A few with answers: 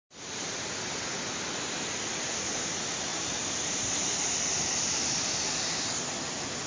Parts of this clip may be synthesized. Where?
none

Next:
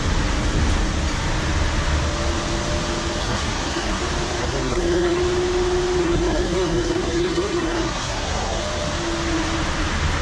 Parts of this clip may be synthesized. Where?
3.2-4.0 (codec, SNAC); 4.4-5.2; 6.0-8.6

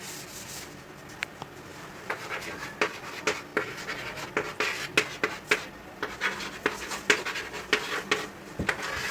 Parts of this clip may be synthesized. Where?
1.7-2.4 (vocoder, BigVGAN v2)

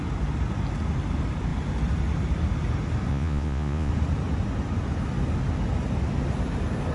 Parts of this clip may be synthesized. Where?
3.1-3.9 (vocoder, Vocos)

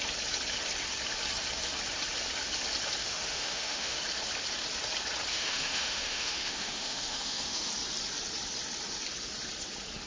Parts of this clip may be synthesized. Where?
3.0-4.0 (autoencoder, DAC-VAE); 5.3-7.7

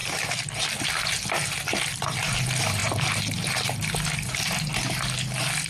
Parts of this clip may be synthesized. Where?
2.8-5.2 (vocoder, BigVGAN v2)

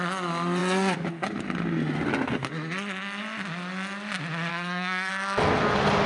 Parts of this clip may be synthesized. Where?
4.5-5.1 (codec, SNAC)